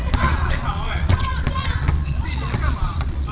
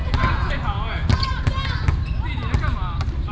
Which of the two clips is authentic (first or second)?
second